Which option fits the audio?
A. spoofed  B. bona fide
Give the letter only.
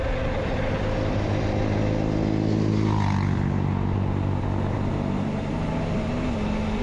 B